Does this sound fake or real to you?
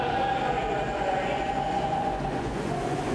fake